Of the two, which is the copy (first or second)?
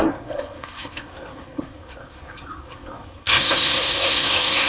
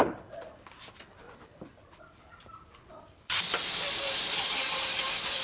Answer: first